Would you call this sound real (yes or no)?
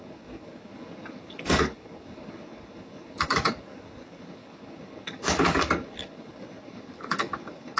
no